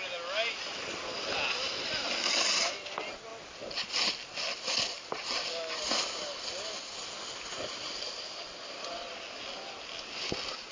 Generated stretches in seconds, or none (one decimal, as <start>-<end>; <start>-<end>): none